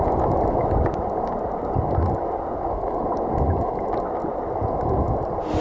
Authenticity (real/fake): real